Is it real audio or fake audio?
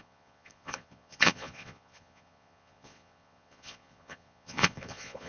fake